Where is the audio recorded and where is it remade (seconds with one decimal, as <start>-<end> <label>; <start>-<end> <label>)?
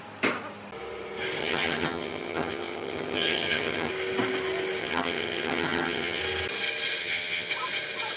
0.0-1.4 recorded; 1.4-3.9 remade; 3.9-4.8 recorded; 4.8-6.2 remade; 6.2-7.0 recorded; 7.0-7.5 remade; 7.5-8.2 recorded